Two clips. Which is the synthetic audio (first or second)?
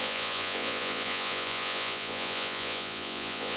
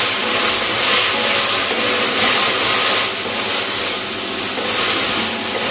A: first